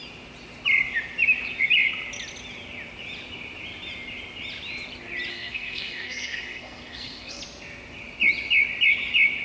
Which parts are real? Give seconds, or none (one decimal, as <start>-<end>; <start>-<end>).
0.0-5.3; 7.4-9.4